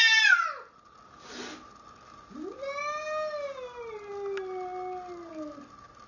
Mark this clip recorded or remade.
recorded